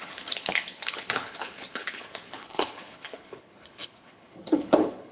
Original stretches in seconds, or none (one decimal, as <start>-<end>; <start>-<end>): none